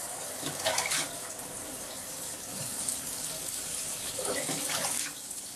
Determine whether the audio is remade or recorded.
remade